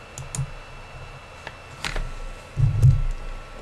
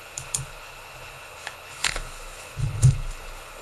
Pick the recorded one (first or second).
first